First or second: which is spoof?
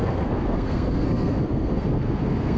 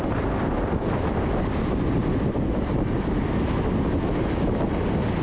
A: first